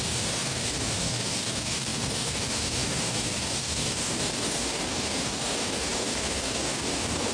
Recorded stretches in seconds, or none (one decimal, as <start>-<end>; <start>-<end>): none